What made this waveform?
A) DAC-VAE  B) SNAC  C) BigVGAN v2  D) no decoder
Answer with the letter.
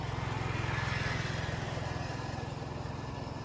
D